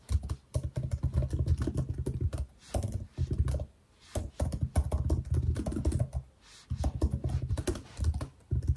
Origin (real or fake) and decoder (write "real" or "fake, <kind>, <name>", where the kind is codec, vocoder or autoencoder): real